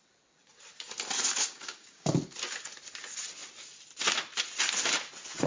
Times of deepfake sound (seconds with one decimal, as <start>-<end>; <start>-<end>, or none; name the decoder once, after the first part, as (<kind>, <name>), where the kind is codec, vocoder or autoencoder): 1.4-2.1 (codec, DAC)